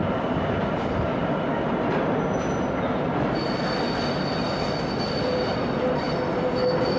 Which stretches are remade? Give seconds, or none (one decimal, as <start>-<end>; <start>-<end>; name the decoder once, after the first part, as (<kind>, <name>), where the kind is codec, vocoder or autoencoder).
none